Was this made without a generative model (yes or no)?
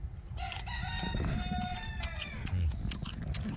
yes